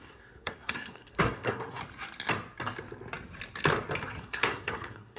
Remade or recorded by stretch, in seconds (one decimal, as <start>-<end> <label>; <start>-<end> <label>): 0.0-1.8 remade; 1.8-4.2 recorded; 4.2-5.2 remade